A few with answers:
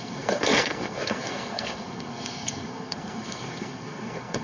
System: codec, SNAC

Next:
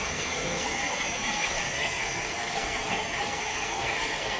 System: codec, SNAC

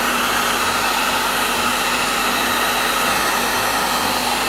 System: none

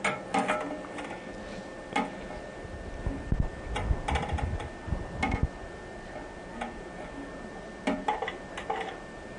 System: none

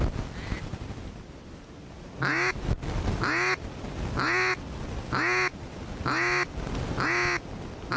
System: none